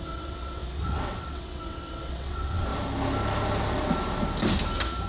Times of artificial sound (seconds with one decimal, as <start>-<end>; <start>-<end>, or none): 0.0-2.7